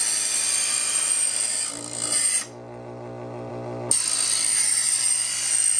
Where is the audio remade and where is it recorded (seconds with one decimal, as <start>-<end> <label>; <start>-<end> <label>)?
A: 0.0-5.8 recorded